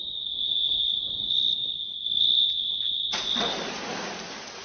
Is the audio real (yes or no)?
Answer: yes